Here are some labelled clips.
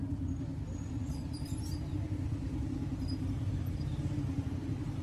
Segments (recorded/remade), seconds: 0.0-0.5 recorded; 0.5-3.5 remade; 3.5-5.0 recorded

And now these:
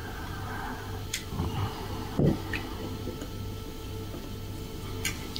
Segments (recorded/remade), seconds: 0.0-5.4 recorded

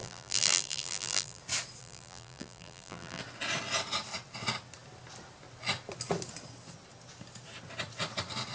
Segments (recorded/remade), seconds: 0.0-1.4 remade; 1.4-1.8 recorded; 1.8-3.2 remade; 3.2-8.5 recorded

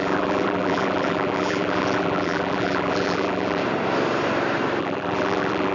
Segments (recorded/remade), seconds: 0.0-3.6 remade; 3.6-4.8 recorded; 4.8-5.7 remade

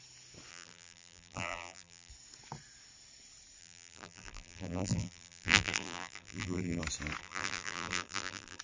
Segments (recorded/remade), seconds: 0.0-0.5 recorded; 0.5-2.1 remade; 2.1-3.6 recorded; 3.6-6.8 remade; 6.8-7.2 recorded; 7.2-8.6 remade